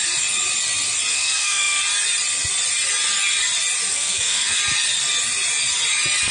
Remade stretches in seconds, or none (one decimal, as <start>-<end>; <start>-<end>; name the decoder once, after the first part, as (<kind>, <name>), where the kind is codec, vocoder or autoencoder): 1.1-1.8 (codec, SNAC); 3.9-4.6

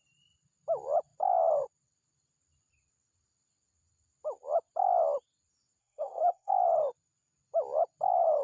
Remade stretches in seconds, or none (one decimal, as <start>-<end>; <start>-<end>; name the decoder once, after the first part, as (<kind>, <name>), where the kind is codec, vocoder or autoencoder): 5.8-6.5 (codec, SNAC)

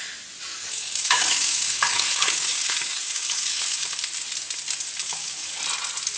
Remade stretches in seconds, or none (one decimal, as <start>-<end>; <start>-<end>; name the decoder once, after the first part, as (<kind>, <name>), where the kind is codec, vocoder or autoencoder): 0.5-3.9 (codec, DAC); 5.0-5.6

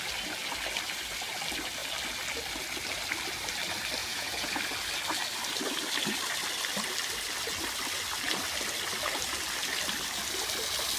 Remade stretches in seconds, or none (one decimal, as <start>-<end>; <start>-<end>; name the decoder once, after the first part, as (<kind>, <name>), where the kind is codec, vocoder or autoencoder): 4.0-4.6 (vocoder, Vocos)